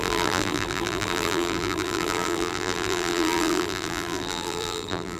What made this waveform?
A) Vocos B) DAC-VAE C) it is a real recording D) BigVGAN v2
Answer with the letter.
D